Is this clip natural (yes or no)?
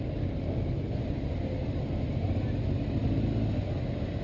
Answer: yes